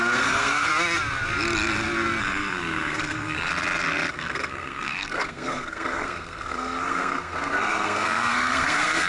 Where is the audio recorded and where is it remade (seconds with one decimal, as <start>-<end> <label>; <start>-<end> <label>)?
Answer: 0.0-0.7 remade; 0.7-2.2 recorded; 2.2-3.5 remade; 3.5-4.1 recorded; 4.1-9.1 remade

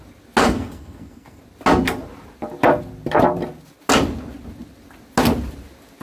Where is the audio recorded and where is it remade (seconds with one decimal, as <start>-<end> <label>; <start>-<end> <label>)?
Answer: 0.0-0.4 recorded; 0.4-1.4 remade; 1.4-6.0 recorded

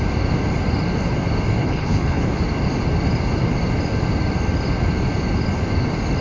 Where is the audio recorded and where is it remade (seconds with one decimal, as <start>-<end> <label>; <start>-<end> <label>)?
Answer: 0.0-1.6 recorded; 1.6-2.4 remade; 2.4-6.2 recorded

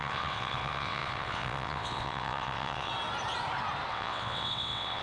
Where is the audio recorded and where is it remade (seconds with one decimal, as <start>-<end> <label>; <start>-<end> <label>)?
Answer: 0.0-2.9 remade; 2.9-3.9 recorded; 3.9-5.0 remade

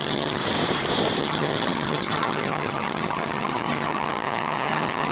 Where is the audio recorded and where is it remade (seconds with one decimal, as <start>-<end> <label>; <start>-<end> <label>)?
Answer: 0.0-0.4 remade; 0.4-1.2 recorded; 1.2-5.1 remade

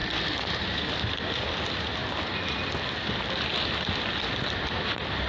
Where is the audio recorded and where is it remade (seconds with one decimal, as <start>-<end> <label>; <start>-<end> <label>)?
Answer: 0.0-0.8 remade; 0.8-5.3 recorded